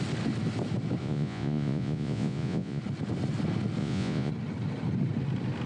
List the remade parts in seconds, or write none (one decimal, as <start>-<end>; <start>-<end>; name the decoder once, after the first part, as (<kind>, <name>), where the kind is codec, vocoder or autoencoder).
1.0-2.8 (vocoder, Vocos); 3.8-4.3